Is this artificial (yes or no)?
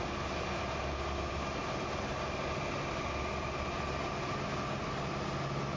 no